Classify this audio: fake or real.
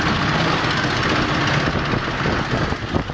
real